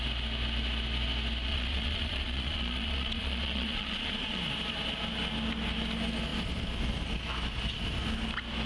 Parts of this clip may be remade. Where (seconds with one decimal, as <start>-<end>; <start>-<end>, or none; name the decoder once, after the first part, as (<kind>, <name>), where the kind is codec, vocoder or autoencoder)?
1.5-4.4 (vocoder, Vocos)